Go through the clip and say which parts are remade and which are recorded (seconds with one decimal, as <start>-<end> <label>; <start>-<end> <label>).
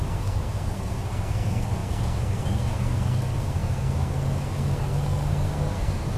0.0-6.2 remade